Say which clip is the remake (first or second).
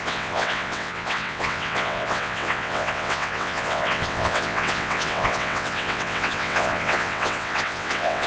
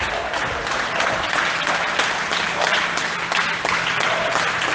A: first